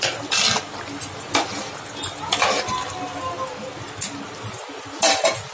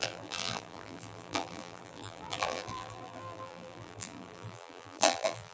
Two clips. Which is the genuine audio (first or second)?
first